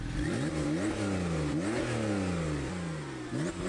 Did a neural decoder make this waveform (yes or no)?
no